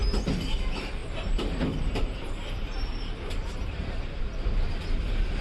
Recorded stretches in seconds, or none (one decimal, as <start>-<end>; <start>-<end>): 0.0-1.0; 4.2-5.4